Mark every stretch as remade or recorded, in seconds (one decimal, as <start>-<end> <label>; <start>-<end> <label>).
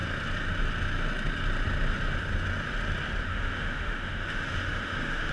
0.0-3.2 recorded; 3.2-5.3 remade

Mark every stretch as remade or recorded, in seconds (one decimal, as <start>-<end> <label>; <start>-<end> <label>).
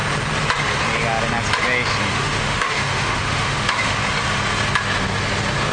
0.0-2.1 recorded; 2.1-4.0 remade; 4.0-5.7 recorded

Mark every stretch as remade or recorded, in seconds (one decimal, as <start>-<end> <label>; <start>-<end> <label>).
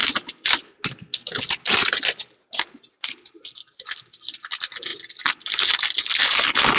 0.0-6.8 recorded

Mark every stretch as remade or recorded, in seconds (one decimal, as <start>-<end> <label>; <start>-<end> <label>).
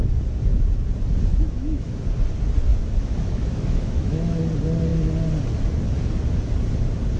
0.0-1.3 recorded; 1.3-1.9 remade; 1.9-2.7 recorded; 2.7-4.4 remade; 4.4-7.2 recorded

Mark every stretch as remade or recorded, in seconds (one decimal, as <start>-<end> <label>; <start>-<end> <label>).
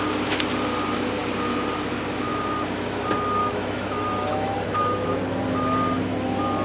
0.0-3.4 recorded; 3.4-5.1 remade; 5.1-6.6 recorded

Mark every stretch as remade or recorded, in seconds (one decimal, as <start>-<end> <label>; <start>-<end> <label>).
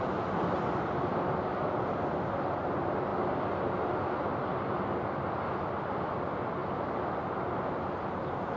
0.0-8.6 recorded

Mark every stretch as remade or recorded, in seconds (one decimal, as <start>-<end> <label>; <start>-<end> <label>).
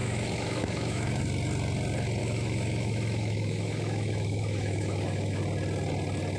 0.0-1.2 remade; 1.2-2.2 recorded; 2.2-5.4 remade; 5.4-6.4 recorded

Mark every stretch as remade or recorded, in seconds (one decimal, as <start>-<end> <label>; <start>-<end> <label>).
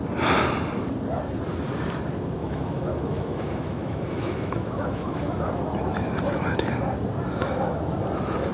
0.0-2.4 recorded; 2.4-5.5 remade; 5.5-8.5 recorded